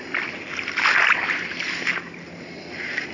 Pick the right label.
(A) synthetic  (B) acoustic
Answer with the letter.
B